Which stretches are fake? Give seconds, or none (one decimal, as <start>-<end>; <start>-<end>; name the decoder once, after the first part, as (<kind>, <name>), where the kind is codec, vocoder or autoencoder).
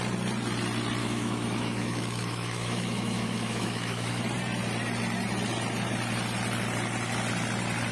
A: 1.0-4.2 (autoencoder, DAC-VAE)